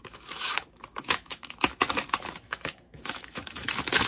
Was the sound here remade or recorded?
remade